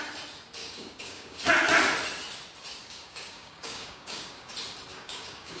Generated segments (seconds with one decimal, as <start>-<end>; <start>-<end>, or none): 0.6-1.4; 2.8-4.5; 4.9-5.6